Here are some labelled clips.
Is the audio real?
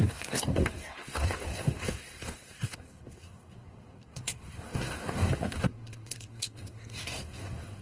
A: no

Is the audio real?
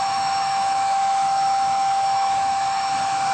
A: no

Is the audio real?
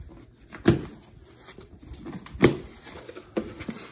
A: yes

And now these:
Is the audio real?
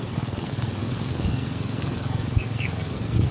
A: no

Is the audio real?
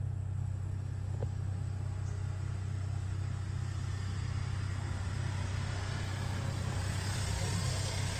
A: yes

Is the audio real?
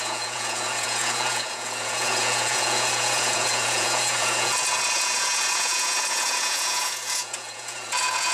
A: no